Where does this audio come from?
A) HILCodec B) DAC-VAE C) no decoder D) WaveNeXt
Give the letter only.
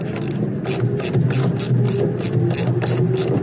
C